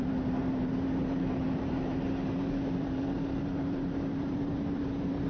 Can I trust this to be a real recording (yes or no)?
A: no